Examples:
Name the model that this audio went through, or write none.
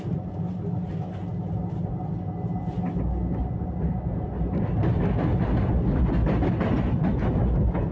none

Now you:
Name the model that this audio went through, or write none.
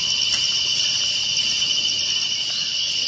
none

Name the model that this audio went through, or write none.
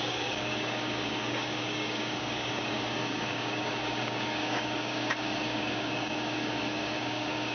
codec, DAC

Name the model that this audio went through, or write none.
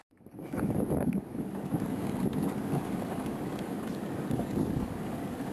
codec, DAC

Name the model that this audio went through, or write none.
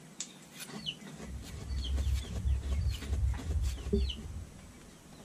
none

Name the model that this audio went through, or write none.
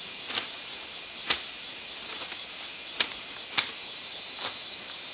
none